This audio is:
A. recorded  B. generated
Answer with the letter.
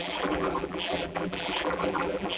B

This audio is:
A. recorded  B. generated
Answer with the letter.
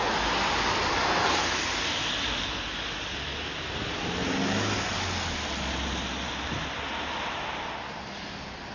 A